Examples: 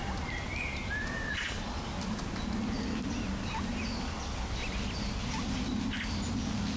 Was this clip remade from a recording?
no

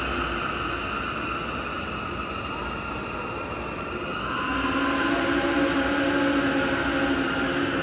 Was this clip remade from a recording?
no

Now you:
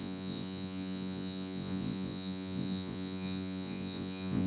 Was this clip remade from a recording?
yes